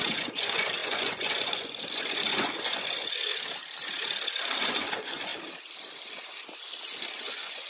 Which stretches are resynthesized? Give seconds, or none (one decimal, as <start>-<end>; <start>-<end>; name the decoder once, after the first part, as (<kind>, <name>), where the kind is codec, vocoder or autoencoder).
0.0-3.3 (vocoder, Vocos); 4.6-5.3; 7.2-7.7